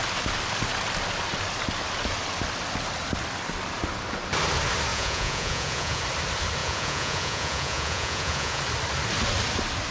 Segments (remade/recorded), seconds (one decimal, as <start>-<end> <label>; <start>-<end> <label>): 0.0-4.9 recorded; 4.9-6.0 remade; 6.0-6.6 recorded; 6.6-8.6 remade; 8.6-9.9 recorded